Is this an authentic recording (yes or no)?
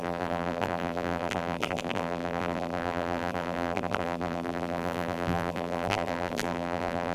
no